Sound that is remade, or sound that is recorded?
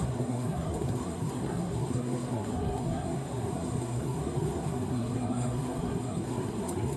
remade